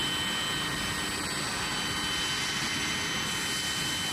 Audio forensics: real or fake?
real